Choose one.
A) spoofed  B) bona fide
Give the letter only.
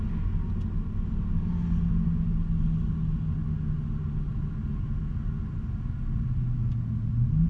B